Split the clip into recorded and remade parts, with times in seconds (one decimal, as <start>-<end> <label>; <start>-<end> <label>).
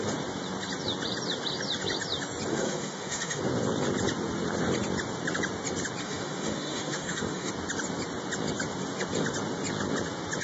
0.0-2.5 recorded; 2.5-3.4 remade; 3.4-6.0 recorded; 6.0-7.5 remade; 7.5-10.4 recorded